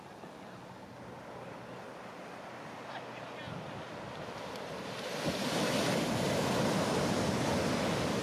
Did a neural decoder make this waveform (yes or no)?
no